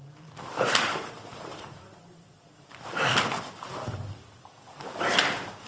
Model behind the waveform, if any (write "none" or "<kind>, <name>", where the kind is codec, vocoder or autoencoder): vocoder, BigVGAN v2